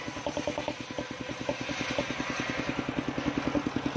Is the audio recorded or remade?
recorded